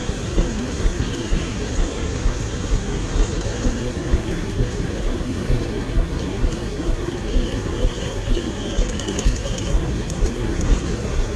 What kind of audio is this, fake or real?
fake